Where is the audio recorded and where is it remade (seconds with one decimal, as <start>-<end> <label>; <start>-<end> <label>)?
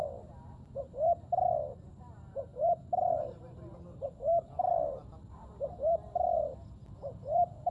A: 0.0-2.5 recorded; 2.5-3.8 remade; 3.8-7.7 recorded